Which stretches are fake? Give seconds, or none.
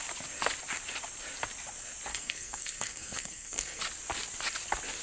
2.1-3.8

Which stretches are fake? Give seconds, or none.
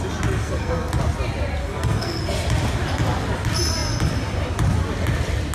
0.4-0.9; 1.6-2.2